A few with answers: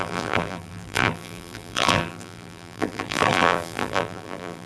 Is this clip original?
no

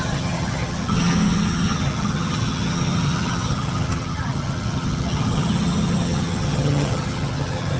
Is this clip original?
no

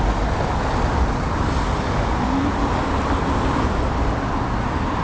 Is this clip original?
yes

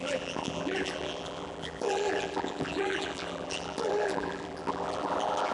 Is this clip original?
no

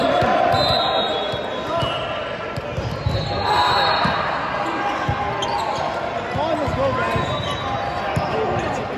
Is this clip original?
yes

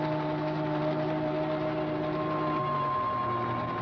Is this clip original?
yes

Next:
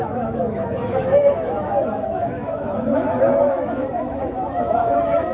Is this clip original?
no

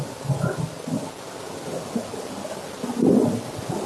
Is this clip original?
yes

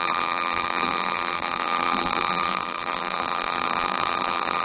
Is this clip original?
no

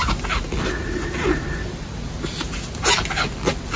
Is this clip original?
yes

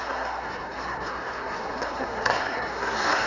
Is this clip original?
no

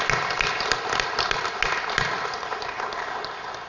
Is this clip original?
yes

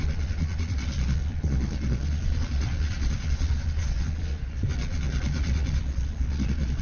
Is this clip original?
no